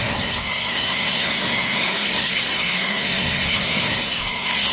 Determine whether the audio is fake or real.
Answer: fake